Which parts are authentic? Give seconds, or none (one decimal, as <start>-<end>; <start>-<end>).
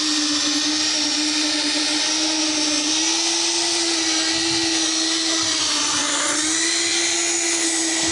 0.0-8.1